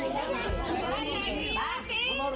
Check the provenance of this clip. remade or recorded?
recorded